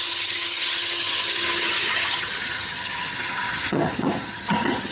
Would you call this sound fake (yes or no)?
yes